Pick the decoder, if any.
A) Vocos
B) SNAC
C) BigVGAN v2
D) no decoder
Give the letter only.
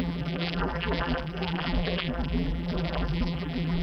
C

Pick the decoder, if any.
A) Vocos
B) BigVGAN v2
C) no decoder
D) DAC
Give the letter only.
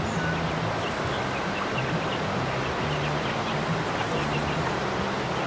C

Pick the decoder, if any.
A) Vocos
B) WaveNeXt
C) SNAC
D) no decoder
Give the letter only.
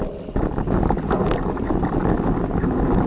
D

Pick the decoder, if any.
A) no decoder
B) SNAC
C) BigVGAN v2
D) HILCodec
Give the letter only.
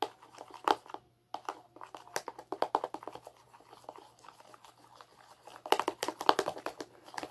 A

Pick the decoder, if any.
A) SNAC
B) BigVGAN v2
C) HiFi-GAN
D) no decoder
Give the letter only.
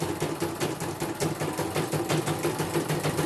D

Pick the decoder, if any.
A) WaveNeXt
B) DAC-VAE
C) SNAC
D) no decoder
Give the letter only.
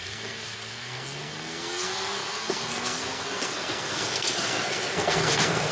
C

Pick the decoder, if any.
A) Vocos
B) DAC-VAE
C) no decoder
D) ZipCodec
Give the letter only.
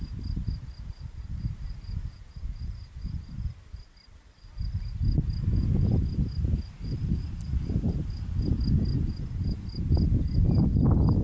C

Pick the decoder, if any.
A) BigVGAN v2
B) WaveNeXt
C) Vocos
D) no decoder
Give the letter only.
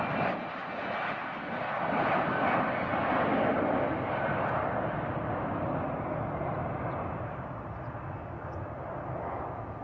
D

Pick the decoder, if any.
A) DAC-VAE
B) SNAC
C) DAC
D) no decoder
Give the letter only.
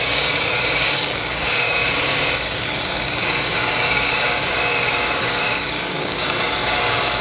C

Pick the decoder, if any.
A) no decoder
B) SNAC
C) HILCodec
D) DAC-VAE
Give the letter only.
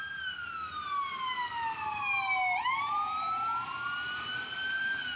A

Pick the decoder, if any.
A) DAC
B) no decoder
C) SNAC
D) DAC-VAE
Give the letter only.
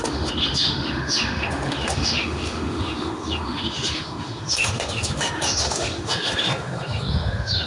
D